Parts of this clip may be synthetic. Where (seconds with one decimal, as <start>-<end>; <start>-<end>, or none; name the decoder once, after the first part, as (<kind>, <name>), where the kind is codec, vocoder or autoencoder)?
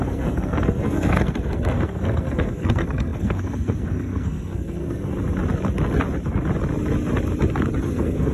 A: 0.0-5.1 (codec, SNAC); 7.8-8.3